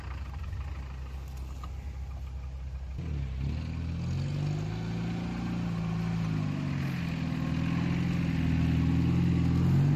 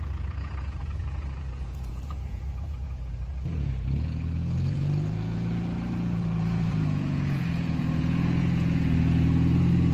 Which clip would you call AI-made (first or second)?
second